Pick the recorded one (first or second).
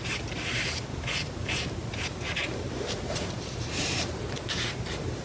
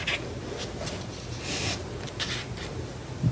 second